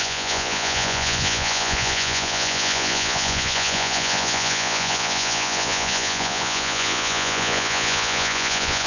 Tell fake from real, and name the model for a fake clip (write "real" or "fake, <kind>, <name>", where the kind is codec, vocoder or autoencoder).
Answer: fake, vocoder, Vocos